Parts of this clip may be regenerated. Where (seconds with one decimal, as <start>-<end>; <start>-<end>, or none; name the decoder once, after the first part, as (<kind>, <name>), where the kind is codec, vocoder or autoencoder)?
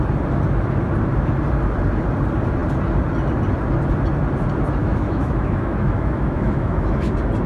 4.8-7.1 (autoencoder, DAC-VAE)